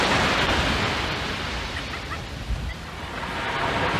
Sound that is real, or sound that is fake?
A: real